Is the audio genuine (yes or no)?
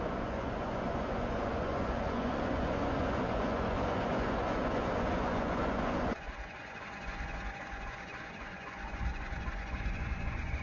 no